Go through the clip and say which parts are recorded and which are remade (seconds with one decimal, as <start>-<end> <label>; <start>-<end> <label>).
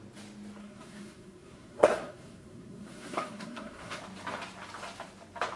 0.0-0.6 recorded; 0.6-4.0 remade; 4.0-5.6 recorded